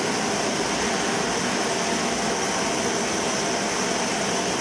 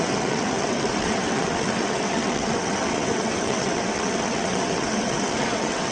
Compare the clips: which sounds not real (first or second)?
second